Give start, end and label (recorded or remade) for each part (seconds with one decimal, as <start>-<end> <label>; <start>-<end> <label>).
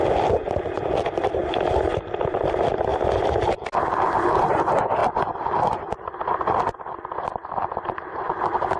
0.0-8.8 recorded